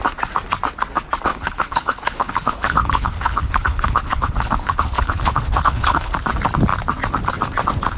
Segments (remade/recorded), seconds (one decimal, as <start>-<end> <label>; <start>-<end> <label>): 0.0-1.3 recorded; 1.3-6.1 remade; 6.1-8.0 recorded